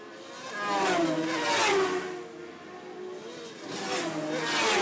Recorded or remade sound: recorded